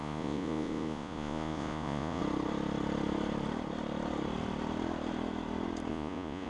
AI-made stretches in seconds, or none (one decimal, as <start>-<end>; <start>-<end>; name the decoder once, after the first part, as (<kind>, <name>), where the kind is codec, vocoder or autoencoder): 0.0-2.2 (vocoder, Vocos); 5.9-6.5